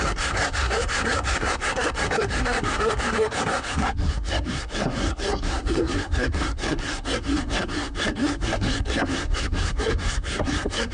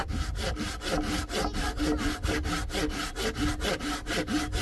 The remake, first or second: first